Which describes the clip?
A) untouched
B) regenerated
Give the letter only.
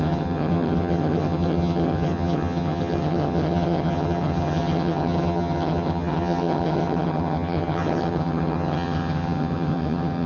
B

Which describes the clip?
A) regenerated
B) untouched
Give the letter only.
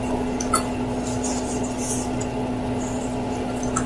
B